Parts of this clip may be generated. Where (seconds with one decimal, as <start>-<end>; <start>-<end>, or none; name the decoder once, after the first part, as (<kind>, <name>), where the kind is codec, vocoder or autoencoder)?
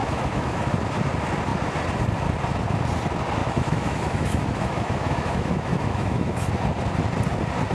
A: 0.0-0.7 (autoencoder, DAC-VAE); 3.4-6.5